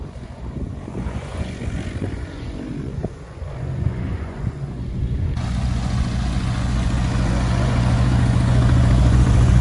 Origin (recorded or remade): remade